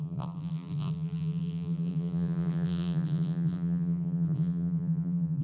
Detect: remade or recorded remade